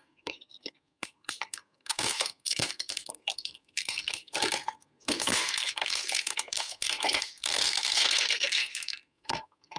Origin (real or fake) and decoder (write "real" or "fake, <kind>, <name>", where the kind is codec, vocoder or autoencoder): fake, codec, SNAC